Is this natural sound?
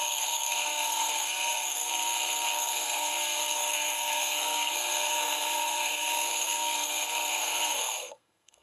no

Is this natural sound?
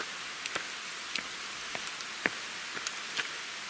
yes